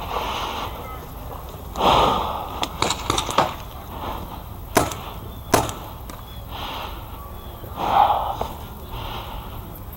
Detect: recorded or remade recorded